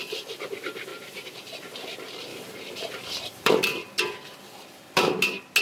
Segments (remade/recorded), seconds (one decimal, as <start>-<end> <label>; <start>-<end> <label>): 0.0-0.9 recorded; 0.9-1.7 remade; 1.7-2.3 recorded; 2.3-3.5 remade; 3.5-5.6 recorded